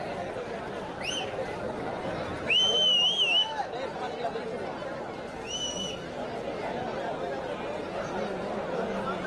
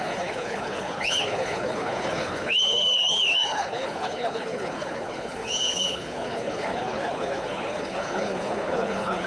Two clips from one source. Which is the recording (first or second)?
first